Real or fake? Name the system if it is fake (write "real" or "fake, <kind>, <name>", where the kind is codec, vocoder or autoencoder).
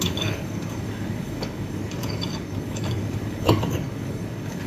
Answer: fake, codec, DAC